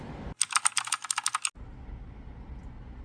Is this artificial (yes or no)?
no